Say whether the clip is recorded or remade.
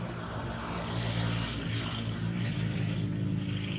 recorded